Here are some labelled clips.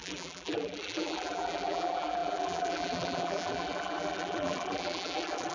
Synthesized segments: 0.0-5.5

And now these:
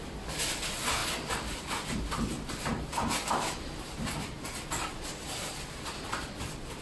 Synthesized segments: none

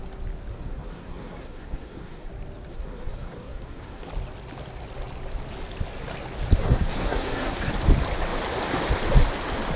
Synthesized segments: 0.5-2.3; 2.7-4.1; 6.6-7.7

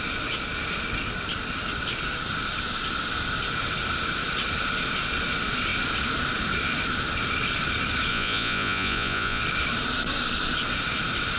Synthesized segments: 8.1-9.4

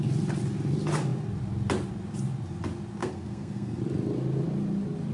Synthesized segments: 3.0-3.8

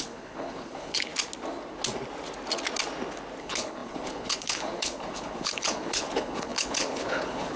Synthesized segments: 0.0-1.1; 3.4-7.6

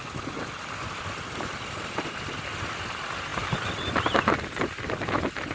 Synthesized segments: none

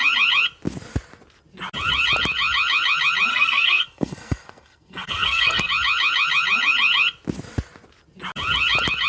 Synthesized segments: 3.3-5.7